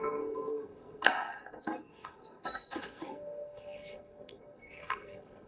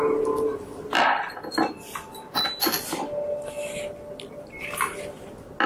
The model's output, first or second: first